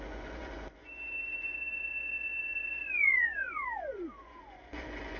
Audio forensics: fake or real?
fake